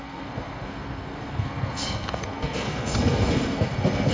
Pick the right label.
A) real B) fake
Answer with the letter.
B